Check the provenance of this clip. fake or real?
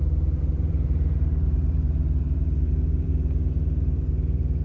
fake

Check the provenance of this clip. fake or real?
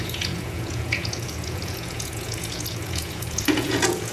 fake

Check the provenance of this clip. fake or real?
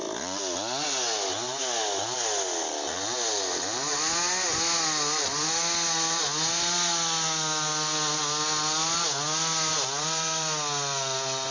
real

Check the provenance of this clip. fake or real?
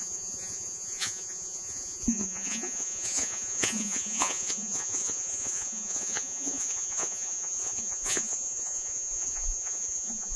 fake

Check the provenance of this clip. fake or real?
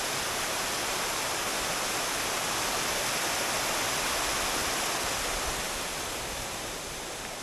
real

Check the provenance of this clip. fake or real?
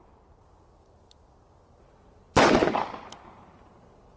real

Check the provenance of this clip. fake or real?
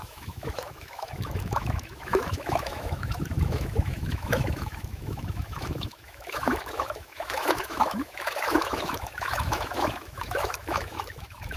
fake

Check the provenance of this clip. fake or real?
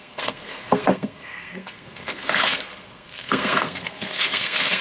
fake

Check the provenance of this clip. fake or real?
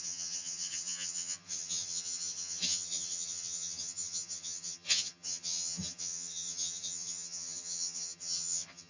fake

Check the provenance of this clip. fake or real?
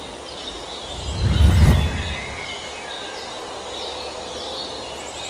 real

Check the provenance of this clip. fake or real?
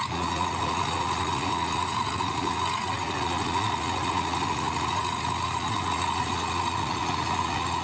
fake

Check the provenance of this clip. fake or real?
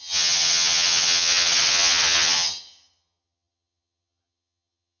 fake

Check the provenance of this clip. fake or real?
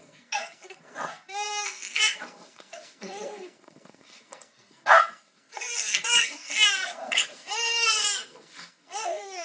fake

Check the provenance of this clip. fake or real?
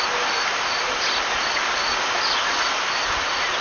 real